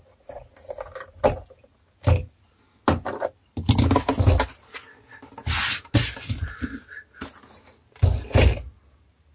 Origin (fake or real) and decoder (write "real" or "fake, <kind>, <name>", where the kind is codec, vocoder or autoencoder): real